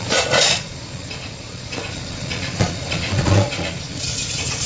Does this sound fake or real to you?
fake